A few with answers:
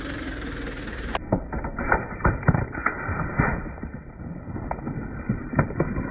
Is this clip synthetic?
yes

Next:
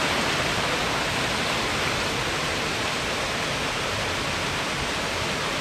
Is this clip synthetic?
no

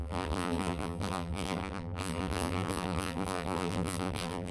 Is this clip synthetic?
yes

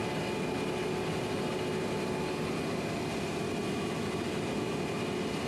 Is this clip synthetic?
no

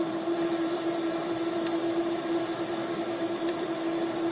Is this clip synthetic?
yes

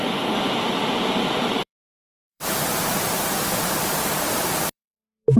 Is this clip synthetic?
yes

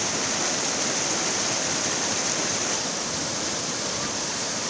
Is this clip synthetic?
no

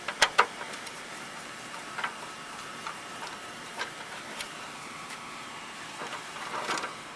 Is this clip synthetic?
yes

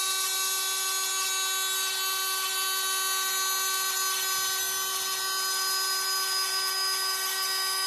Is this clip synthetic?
no